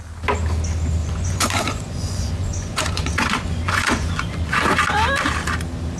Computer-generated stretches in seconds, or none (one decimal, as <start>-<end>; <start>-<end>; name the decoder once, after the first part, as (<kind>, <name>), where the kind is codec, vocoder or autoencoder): 1.0-4.6 (vocoder, Vocos)